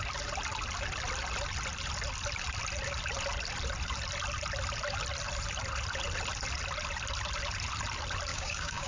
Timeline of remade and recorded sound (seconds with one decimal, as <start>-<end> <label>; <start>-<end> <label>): 0.0-8.3 recorded; 8.3-8.9 remade